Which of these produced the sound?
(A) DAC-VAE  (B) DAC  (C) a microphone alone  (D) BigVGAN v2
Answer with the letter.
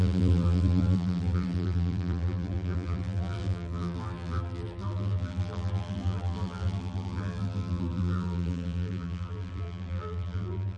D